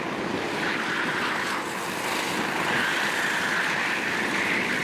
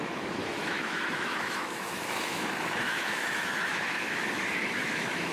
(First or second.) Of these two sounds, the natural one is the first